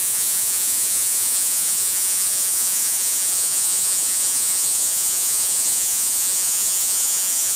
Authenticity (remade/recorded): remade